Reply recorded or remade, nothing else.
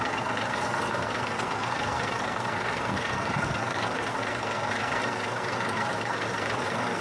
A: remade